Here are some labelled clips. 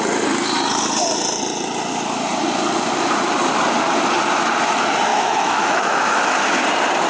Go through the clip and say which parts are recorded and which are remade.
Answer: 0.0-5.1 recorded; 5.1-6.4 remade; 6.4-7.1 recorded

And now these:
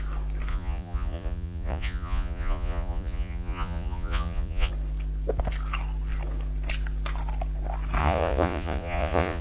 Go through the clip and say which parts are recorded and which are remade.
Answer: 0.0-0.5 recorded; 0.5-4.7 remade; 4.7-8.0 recorded; 8.0-9.4 remade

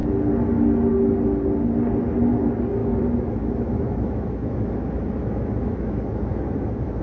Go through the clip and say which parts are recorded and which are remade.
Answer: 0.0-2.8 recorded; 2.8-7.0 remade

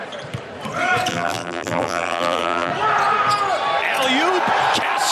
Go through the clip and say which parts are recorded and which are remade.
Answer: 0.0-1.1 recorded; 1.1-2.7 remade; 2.7-5.1 recorded